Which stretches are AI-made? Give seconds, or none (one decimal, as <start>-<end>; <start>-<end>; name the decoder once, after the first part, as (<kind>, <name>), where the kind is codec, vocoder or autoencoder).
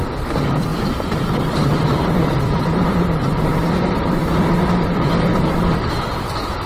0.7-4.7 (vocoder, BigVGAN v2); 5.3-6.1